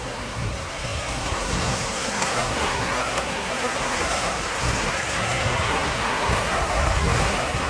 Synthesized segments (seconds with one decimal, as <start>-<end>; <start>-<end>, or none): 0.0-7.7